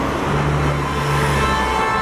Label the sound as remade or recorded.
recorded